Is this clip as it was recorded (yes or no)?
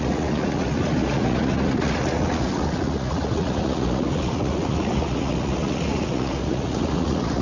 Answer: no